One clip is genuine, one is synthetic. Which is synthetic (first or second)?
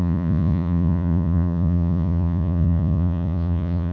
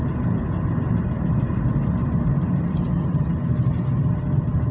first